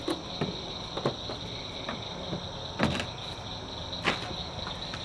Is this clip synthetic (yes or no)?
no